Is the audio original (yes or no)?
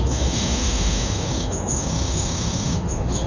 no